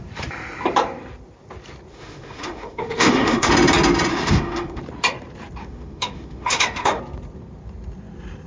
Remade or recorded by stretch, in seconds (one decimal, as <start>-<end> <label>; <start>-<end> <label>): 0.0-1.9 recorded; 1.9-3.5 remade; 3.5-4.1 recorded; 4.1-4.8 remade; 4.8-5.6 recorded; 5.6-7.0 remade; 7.0-8.5 recorded